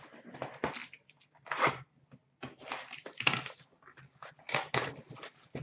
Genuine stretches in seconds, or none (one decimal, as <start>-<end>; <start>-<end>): 0.0-5.6